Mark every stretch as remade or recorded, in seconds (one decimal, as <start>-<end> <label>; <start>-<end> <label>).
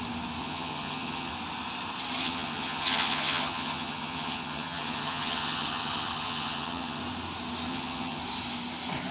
0.0-0.4 recorded; 0.4-1.3 remade; 1.3-2.2 recorded; 2.2-7.0 remade; 7.0-7.7 recorded; 7.7-8.2 remade; 8.2-9.1 recorded